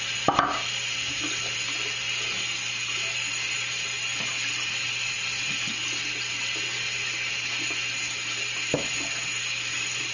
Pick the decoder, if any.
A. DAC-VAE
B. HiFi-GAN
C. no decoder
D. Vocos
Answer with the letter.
C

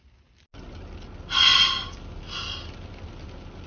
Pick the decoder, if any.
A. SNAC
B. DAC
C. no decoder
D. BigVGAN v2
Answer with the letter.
C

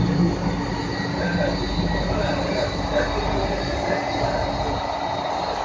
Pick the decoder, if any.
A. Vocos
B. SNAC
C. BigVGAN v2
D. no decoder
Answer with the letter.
D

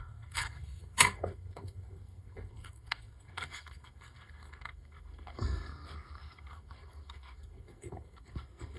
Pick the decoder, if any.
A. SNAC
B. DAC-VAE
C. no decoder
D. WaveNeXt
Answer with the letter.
A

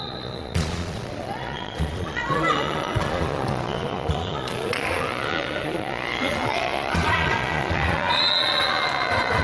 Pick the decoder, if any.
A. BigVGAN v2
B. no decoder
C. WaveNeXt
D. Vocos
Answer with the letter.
D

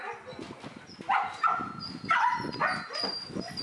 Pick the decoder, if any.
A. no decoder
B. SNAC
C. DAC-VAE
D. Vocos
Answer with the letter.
A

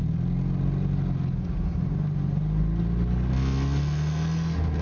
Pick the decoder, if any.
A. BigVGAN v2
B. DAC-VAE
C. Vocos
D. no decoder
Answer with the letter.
D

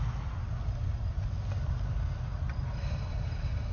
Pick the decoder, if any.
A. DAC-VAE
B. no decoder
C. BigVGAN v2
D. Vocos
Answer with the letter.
B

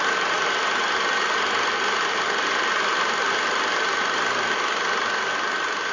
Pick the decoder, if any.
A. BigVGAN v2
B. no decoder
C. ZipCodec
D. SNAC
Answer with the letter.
B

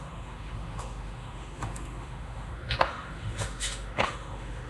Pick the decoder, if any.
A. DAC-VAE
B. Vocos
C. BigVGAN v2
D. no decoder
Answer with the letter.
A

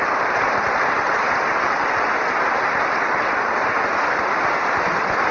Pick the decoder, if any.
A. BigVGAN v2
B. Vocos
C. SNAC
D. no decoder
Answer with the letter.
A